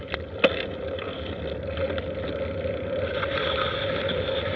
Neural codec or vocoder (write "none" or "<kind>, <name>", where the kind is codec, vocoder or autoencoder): none